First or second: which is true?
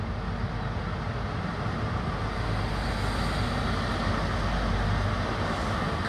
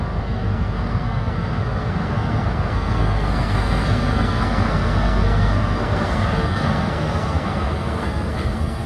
first